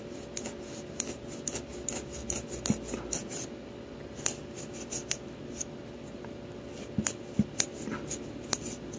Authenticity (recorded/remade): recorded